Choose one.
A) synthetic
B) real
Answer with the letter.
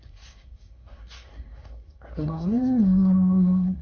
A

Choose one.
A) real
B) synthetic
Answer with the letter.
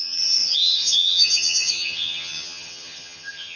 B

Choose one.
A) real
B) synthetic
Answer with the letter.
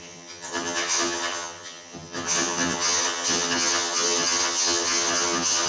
B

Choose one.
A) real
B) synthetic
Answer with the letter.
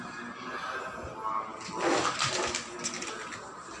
A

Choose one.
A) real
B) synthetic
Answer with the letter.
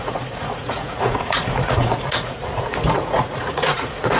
B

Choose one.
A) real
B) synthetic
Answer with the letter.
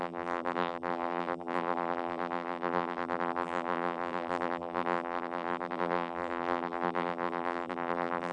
B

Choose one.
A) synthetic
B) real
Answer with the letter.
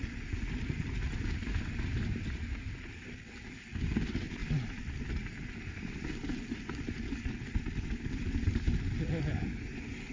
B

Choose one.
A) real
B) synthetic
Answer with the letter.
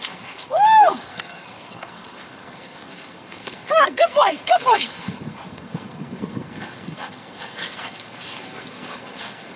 B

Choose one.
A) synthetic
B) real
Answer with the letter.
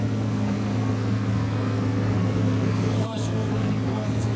A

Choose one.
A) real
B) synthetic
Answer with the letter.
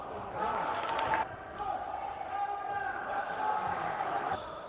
B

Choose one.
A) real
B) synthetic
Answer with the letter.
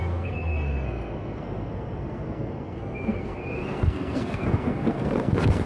B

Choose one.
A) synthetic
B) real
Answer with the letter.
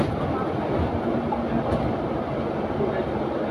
B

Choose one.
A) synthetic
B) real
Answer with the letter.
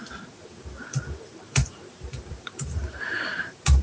A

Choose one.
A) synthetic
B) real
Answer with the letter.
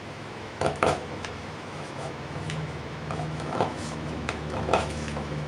A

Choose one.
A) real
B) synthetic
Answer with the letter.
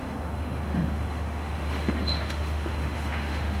B